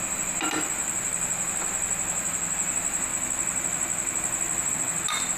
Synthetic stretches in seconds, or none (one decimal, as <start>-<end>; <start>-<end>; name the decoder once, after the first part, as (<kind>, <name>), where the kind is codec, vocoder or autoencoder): none